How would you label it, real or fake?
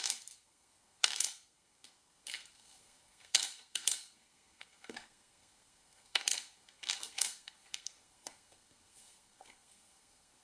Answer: fake